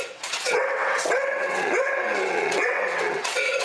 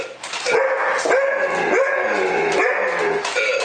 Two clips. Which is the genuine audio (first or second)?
second